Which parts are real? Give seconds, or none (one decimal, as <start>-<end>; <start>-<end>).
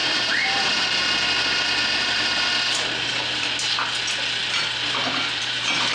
0.8-5.9